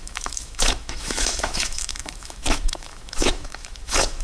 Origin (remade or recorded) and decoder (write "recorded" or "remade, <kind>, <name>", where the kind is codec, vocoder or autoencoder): remade, autoencoder, DAC-VAE